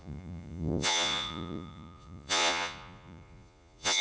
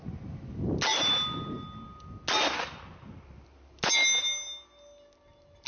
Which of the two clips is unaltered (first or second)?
second